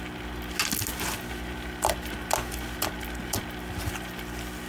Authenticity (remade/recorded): recorded